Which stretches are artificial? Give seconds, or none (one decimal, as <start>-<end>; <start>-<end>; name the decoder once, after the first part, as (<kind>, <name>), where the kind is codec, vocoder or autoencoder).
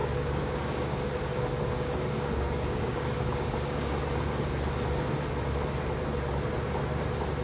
0.0-3.9 (codec, DAC)